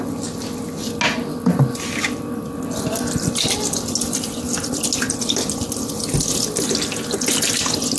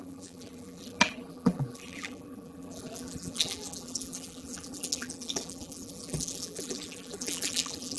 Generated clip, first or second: second